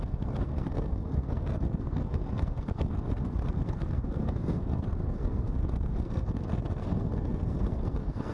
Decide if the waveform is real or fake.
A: fake